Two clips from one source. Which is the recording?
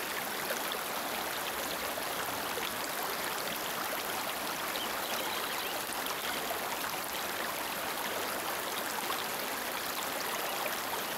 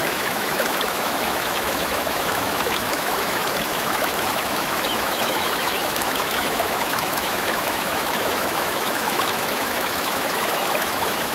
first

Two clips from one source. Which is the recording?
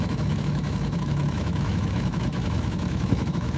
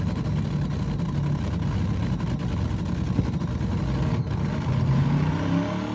second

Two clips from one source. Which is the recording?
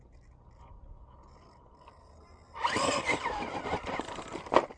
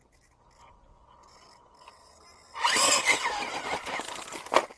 second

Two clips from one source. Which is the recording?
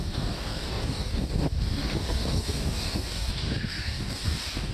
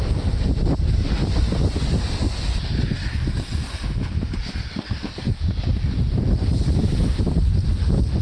second